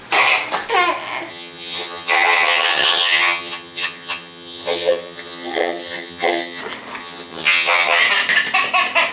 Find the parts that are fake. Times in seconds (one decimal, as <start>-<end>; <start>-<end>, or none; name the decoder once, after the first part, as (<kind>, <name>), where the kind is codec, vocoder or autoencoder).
1.3-6.6 (vocoder, HiFi-GAN); 7.0-8.0